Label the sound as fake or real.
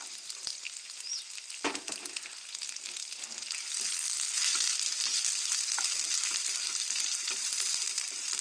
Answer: real